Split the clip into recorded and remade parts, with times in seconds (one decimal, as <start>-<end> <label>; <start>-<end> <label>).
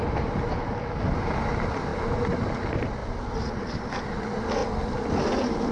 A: 0.0-5.7 recorded